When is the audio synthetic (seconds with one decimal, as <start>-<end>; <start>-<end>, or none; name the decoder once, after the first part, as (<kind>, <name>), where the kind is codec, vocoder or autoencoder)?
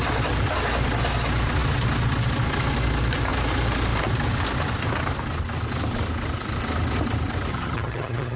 7.5-8.4 (vocoder, HiFi-GAN)